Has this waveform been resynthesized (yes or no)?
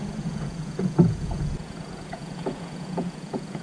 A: yes